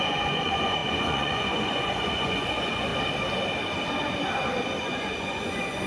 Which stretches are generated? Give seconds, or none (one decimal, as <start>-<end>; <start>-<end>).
0.0-2.9; 4.8-5.9

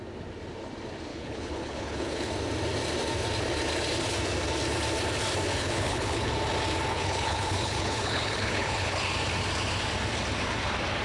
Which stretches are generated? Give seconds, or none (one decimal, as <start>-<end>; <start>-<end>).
1.1-2.3; 5.5-6.3; 6.9-9.0

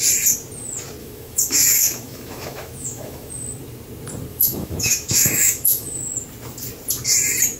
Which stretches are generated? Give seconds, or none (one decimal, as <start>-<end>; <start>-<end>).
1.0-3.3; 4.3-6.0

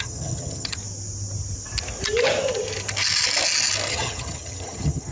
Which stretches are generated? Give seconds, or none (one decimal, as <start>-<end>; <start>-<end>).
0.0-0.8; 3.9-5.1